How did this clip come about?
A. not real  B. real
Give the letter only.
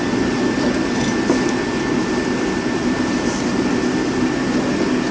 B